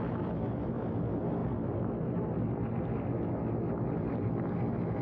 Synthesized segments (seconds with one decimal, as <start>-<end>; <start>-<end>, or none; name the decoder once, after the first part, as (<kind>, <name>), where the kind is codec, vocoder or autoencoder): none